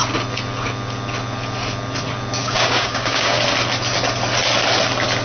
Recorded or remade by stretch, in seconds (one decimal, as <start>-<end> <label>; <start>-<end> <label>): 0.0-2.4 recorded; 2.4-3.4 remade; 3.4-5.2 recorded